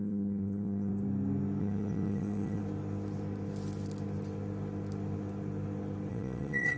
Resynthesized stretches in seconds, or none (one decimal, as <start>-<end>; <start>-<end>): 0.0-0.9; 1.6-2.6; 6.1-6.8